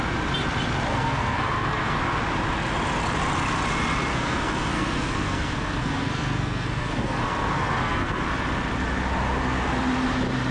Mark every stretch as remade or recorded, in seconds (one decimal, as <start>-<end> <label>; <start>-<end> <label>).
0.0-0.9 recorded; 0.9-2.0 remade; 2.0-4.1 recorded; 4.1-8.2 remade; 8.2-10.5 recorded